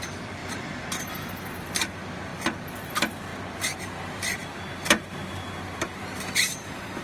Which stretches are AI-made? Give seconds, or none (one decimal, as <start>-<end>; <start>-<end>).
0.0-0.4; 1.0-2.3; 2.8-4.4; 6.0-7.0